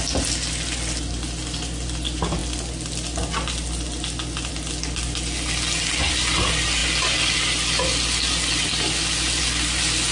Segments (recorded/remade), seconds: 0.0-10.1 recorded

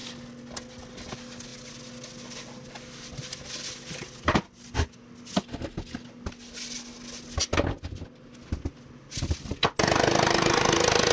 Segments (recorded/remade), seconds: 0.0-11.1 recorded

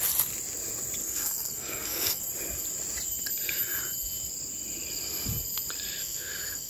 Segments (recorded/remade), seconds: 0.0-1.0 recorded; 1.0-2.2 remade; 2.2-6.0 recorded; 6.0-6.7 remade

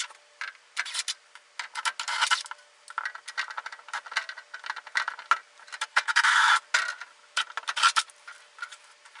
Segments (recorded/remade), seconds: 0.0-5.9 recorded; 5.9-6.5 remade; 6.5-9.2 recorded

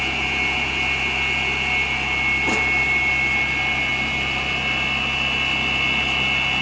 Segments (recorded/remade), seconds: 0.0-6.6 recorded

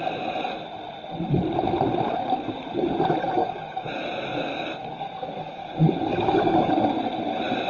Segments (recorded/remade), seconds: 0.0-3.4 recorded; 3.4-3.9 remade; 3.9-4.3 recorded; 4.3-6.7 remade; 6.7-7.7 recorded